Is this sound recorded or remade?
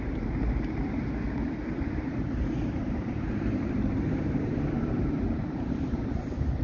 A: remade